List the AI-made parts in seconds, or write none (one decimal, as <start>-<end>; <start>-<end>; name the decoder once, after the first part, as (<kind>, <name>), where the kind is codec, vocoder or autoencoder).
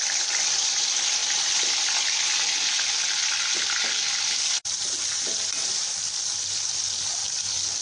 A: 0.0-1.2 (vocoder, BigVGAN v2); 4.6-7.8